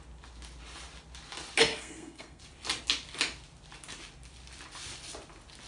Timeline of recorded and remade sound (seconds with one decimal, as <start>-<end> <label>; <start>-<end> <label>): 0.0-1.7 recorded; 1.7-2.4 remade; 2.4-5.7 recorded